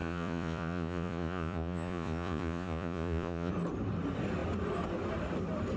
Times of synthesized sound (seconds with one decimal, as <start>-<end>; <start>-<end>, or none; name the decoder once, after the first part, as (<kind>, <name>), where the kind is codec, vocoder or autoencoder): 0.0-3.5 (vocoder, Vocos)